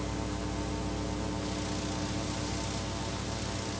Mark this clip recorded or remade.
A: recorded